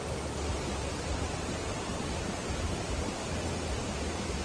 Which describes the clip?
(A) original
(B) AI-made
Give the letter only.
A